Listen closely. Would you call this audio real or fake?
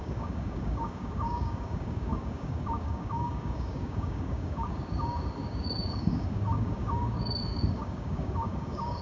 fake